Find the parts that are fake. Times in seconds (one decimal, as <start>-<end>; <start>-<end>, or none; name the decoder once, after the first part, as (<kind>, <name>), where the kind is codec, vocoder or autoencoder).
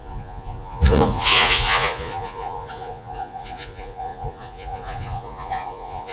0.0-6.1 (vocoder, Vocos)